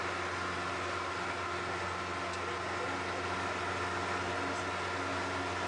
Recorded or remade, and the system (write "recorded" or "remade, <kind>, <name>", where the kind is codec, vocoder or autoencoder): recorded